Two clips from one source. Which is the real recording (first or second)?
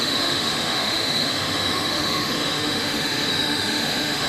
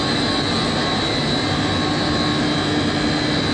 second